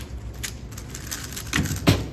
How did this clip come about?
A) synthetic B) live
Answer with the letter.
B